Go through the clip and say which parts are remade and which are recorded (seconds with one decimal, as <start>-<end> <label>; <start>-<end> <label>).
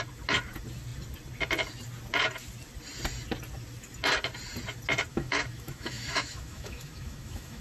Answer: 0.0-5.1 recorded; 5.1-7.6 remade